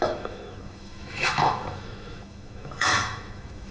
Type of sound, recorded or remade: remade